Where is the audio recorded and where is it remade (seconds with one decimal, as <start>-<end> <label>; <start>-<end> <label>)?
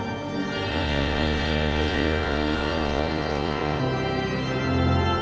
0.0-0.7 recorded; 0.7-3.8 remade; 3.8-5.2 recorded